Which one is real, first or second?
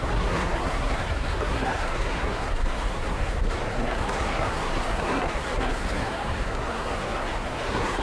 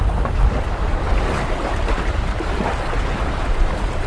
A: second